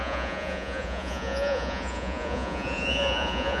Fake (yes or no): yes